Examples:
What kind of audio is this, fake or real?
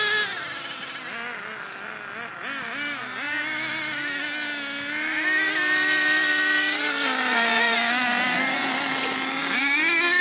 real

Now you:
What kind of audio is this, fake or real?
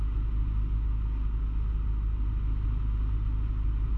real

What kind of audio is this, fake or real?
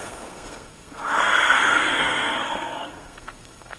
fake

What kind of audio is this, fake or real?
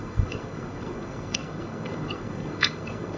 fake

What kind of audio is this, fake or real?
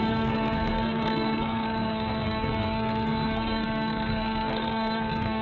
fake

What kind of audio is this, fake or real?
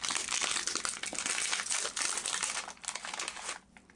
real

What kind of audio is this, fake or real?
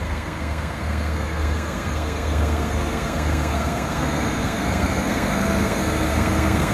fake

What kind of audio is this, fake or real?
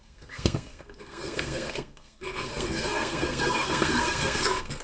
fake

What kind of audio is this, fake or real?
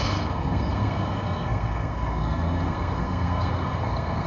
fake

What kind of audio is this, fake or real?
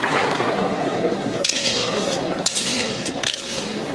fake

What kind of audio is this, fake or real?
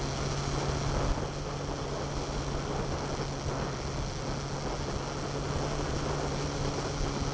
real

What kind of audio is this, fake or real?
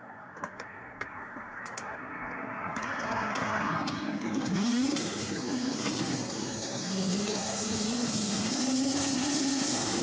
fake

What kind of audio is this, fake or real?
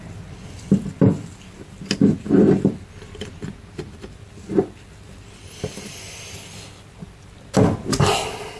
real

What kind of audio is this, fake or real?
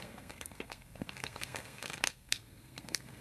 fake